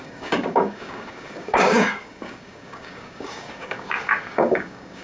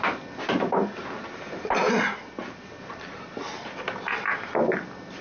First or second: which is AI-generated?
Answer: first